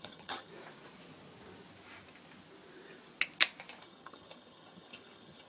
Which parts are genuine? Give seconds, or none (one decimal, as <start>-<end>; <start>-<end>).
0.5-3.8

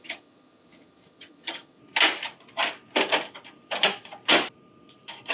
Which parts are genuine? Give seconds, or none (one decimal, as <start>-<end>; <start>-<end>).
1.8-5.3

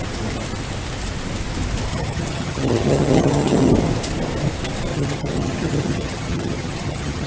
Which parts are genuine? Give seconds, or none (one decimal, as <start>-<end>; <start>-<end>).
0.0-1.9; 3.7-4.9

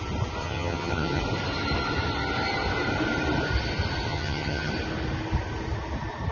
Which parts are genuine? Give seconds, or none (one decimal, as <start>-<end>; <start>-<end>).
0.0-0.4; 1.2-4.1; 4.7-6.3

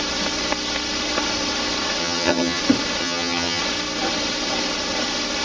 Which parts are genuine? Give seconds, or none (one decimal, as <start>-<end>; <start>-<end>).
0.0-2.0; 2.6-3.0; 3.6-5.4

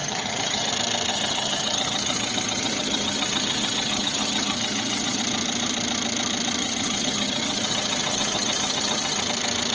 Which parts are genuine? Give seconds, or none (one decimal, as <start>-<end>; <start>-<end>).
0.7-1.1; 5.2-6.6; 9.2-9.7